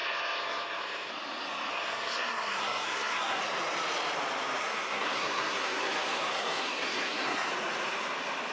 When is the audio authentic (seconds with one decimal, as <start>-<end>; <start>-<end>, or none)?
1.1-1.7; 3.4-4.6; 7.5-8.5